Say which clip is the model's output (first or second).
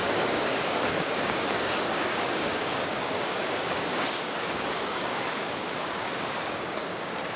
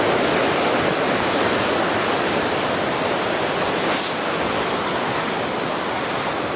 first